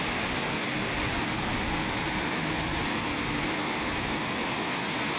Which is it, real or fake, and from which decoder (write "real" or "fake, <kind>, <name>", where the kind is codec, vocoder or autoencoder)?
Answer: real